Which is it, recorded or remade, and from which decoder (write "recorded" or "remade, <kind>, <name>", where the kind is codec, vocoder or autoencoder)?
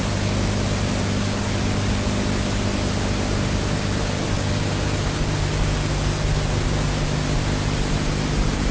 recorded